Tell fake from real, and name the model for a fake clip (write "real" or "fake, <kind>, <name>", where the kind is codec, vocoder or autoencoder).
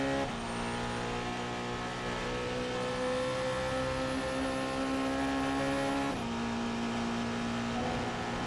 real